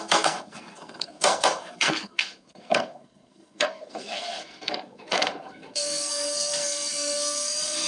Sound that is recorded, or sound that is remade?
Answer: remade